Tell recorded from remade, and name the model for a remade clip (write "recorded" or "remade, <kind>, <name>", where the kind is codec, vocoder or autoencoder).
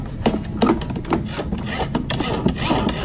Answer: recorded